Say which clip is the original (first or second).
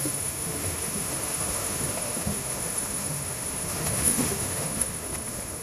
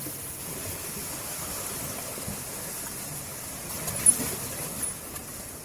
second